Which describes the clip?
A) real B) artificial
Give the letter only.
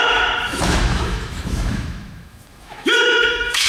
B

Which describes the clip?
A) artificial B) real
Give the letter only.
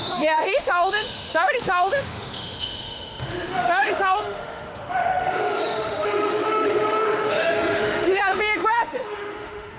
A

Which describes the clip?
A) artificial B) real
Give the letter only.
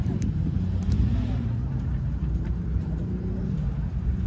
A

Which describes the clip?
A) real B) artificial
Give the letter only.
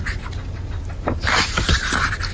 A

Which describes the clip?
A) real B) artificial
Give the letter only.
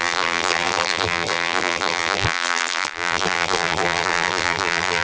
B